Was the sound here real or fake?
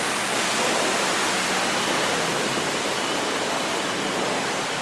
real